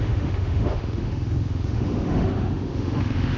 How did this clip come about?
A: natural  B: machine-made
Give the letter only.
B